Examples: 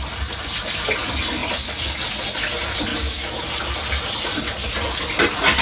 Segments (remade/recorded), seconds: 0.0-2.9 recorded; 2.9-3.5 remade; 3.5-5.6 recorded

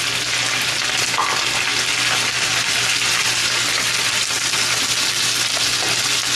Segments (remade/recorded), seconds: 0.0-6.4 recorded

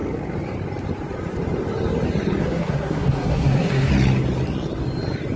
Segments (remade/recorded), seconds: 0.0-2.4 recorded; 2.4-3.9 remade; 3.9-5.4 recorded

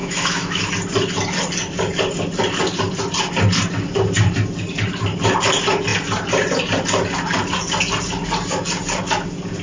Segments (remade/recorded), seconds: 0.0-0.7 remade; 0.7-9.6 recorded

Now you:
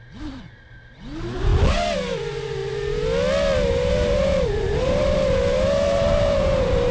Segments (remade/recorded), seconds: 0.0-1.5 remade; 1.5-2.1 recorded; 2.1-2.6 remade; 2.6-3.7 recorded; 3.7-6.9 remade

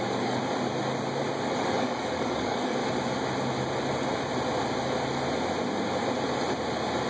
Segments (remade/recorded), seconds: 0.0-0.4 remade; 0.4-1.7 recorded; 1.7-2.8 remade; 2.8-7.1 recorded

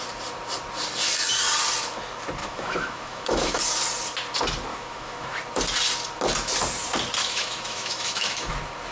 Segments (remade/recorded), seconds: 0.0-2.4 recorded; 2.4-3.6 remade; 3.6-4.7 recorded; 4.7-5.4 remade; 5.4-7.2 recorded; 7.2-8.5 remade; 8.5-8.9 recorded